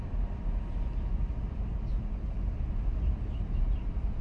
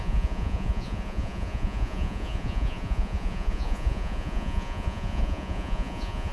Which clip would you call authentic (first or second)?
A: first